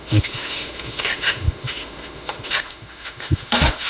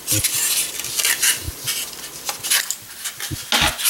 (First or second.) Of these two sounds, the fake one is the first